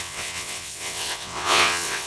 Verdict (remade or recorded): remade